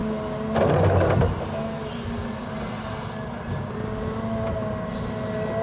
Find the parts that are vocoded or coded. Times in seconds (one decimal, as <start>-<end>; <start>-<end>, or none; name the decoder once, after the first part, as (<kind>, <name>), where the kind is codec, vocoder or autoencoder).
none